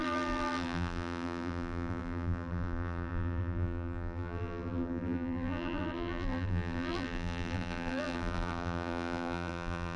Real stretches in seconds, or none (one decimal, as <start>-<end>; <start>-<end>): none